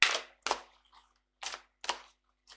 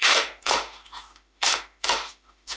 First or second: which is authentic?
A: first